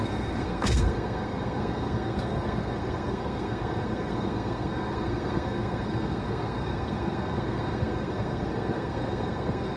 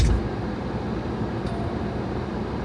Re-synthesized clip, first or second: first